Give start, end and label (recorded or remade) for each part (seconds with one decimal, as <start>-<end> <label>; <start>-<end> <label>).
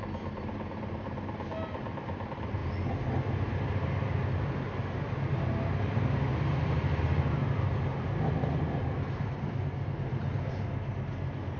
0.0-11.6 recorded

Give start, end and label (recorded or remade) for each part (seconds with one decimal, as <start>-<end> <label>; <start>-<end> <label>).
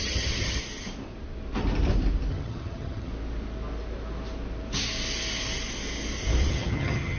0.0-0.6 remade; 0.6-2.3 recorded; 2.3-3.1 remade; 3.1-6.5 recorded; 6.5-7.2 remade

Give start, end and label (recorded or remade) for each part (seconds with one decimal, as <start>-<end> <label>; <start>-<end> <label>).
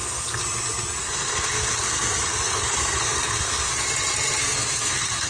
0.0-0.4 remade; 0.4-1.0 recorded; 1.0-3.7 remade; 3.7-4.4 recorded; 4.4-5.3 remade